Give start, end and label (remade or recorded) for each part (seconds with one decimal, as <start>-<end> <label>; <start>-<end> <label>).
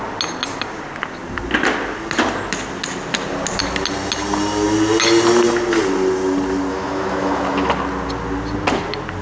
0.0-6.7 recorded; 6.7-7.7 remade; 7.7-9.2 recorded